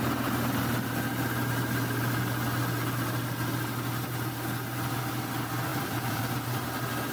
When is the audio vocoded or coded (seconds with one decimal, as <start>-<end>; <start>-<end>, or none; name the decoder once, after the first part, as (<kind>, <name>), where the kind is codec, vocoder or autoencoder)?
5.7-6.2 (vocoder, BigVGAN v2)